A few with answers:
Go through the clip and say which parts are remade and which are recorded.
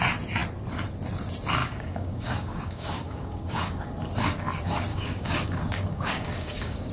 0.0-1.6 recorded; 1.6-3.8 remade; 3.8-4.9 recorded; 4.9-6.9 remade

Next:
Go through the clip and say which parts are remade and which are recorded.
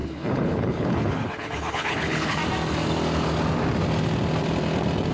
0.0-2.4 remade; 2.4-5.1 recorded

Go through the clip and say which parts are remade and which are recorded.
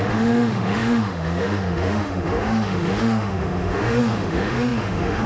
0.0-5.3 remade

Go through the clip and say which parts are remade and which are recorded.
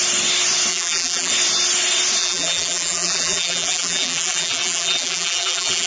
0.0-0.7 recorded; 0.7-1.3 remade; 1.3-2.2 recorded; 2.2-5.9 remade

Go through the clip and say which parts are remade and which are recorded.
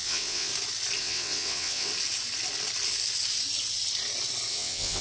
0.0-0.5 remade; 0.5-1.0 recorded; 1.0-1.9 remade; 1.9-4.5 recorded; 4.5-5.0 remade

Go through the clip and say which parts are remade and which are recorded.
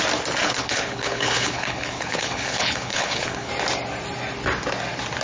0.0-0.4 recorded; 0.4-3.5 remade; 3.5-5.2 recorded